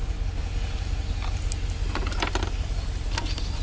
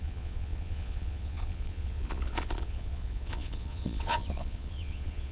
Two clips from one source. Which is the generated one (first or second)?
second